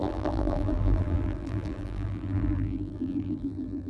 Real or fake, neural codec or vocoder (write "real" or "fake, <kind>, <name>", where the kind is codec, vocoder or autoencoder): fake, vocoder, BigVGAN v2